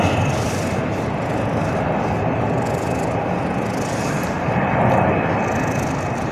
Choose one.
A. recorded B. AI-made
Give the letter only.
A